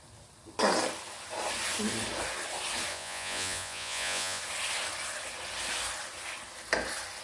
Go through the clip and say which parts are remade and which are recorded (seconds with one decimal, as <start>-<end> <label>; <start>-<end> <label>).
0.0-2.9 recorded; 2.9-4.4 remade; 4.4-7.2 recorded